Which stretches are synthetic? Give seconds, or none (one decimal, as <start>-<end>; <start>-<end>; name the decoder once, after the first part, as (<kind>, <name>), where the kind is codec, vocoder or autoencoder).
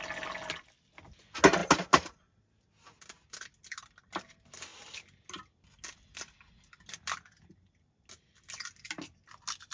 none